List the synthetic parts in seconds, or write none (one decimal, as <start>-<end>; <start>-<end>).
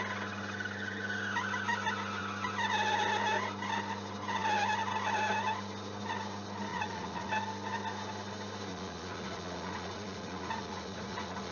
6.7-7.3; 8.7-11.5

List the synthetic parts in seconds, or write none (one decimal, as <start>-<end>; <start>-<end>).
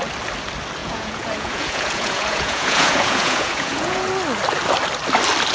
0.8-4.1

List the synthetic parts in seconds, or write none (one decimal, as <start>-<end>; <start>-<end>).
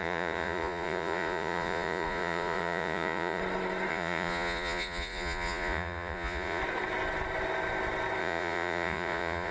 0.0-3.4; 3.9-6.6; 8.2-9.5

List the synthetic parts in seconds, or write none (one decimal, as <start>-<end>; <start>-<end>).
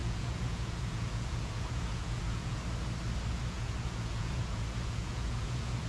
0.0-2.6; 3.3-5.9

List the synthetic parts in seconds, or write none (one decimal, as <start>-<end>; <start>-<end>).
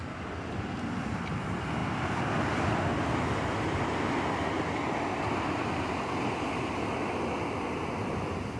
none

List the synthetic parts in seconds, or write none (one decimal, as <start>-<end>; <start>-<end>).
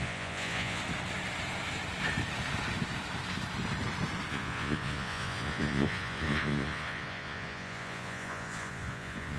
0.0-0.8; 4.3-9.4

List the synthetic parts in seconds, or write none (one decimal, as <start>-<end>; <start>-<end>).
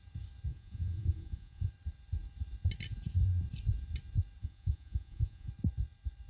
0.5-1.7; 4.4-5.5